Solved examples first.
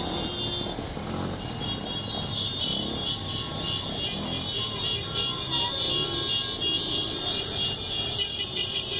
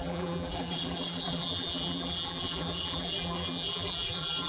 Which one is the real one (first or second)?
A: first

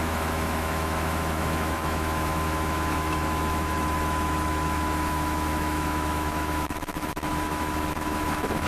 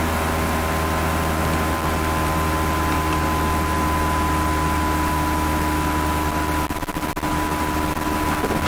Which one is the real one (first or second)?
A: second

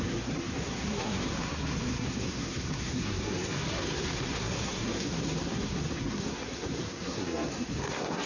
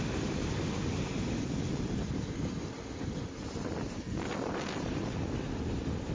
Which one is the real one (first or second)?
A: second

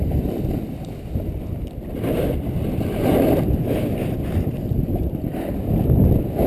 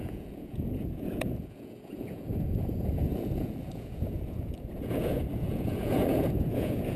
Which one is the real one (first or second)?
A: first